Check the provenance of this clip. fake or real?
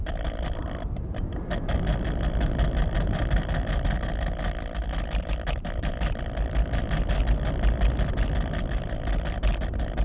real